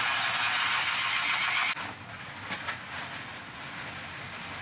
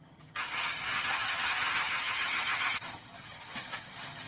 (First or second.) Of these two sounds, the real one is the first